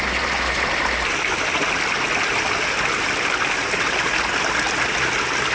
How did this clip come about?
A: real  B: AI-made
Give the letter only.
A